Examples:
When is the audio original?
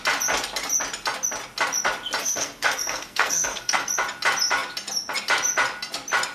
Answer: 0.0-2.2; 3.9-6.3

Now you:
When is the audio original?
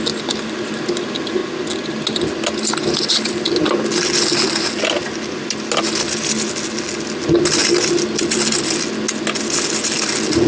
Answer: 0.0-10.5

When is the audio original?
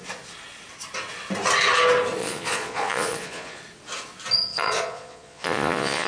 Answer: 0.0-2.2; 3.6-4.5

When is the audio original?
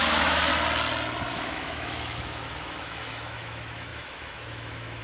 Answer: 0.5-1.3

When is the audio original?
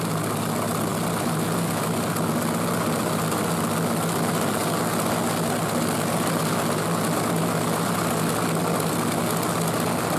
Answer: 0.0-10.2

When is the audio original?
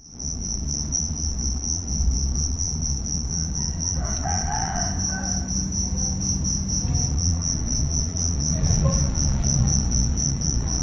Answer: 4.8-7.1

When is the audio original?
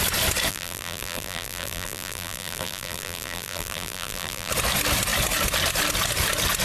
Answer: 0.0-0.5; 4.5-6.6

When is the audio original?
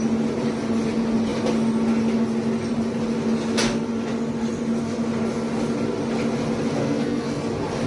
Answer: 0.0-6.8; 7.4-7.9